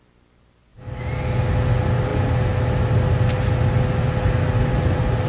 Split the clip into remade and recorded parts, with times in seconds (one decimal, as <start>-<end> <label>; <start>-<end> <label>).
0.0-5.3 recorded